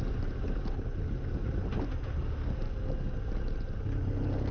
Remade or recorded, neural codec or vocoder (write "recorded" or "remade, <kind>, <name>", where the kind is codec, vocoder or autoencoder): recorded